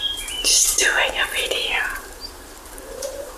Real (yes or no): no